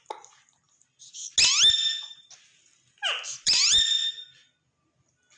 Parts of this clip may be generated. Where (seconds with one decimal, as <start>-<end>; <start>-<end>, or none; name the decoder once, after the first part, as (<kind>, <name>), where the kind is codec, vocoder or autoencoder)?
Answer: 2.5-4.1 (vocoder, BigVGAN v2)